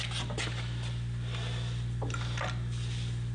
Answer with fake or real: real